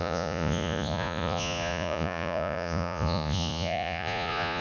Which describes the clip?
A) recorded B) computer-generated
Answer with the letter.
B